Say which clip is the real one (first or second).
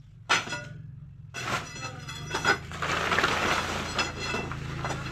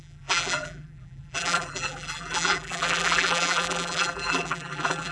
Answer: first